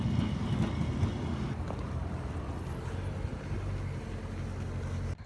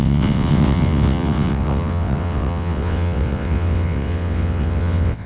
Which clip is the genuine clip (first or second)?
first